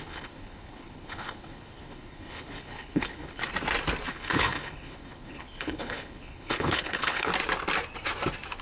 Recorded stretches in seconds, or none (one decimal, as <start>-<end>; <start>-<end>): 3.4-4.1; 7.3-8.6